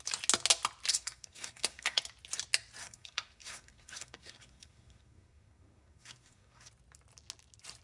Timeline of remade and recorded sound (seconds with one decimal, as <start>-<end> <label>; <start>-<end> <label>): 0.0-0.9 recorded; 0.9-2.0 remade; 2.0-2.8 recorded; 2.8-6.7 remade; 6.7-7.8 recorded